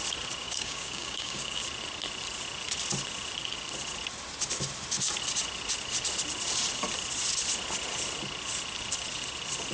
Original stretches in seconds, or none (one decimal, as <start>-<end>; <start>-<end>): 0.0-0.4; 1.6-9.7